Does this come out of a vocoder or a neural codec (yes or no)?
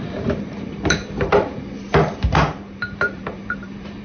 yes